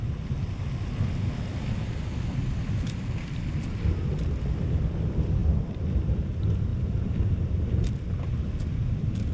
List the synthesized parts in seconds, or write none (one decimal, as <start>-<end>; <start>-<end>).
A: 5.4-6.0; 6.7-7.8